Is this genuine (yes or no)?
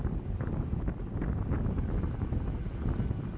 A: yes